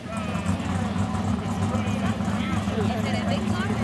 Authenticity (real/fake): real